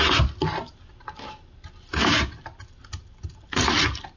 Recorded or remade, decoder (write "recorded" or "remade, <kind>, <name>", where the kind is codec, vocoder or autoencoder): recorded